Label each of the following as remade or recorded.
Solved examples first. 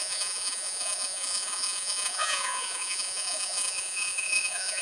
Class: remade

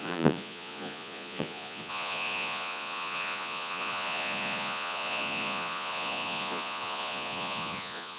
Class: remade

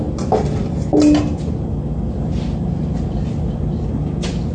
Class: recorded